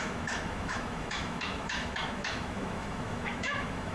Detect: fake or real fake